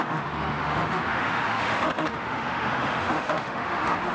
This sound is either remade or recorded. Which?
remade